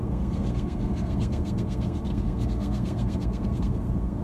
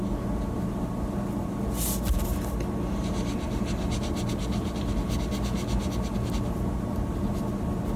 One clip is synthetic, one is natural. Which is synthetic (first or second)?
first